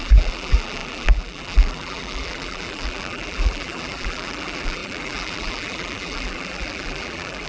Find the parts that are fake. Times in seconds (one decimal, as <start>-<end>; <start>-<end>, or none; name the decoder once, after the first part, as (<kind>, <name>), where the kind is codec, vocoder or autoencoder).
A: 0.0-7.5 (vocoder, BigVGAN v2)